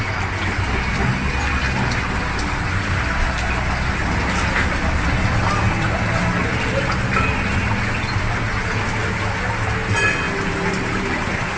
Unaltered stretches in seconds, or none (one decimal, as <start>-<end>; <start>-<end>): 0.0-11.6